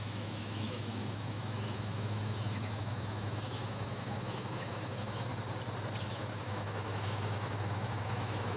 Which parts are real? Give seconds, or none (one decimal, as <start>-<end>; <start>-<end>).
5.3-6.1

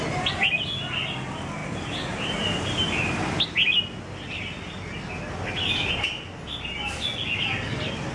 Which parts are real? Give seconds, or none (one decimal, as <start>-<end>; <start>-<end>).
0.0-8.1

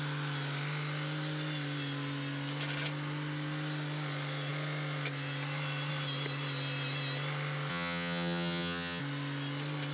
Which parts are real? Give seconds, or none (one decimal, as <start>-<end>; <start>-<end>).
0.0-7.7; 9.0-9.9